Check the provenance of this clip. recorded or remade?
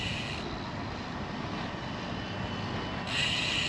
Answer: recorded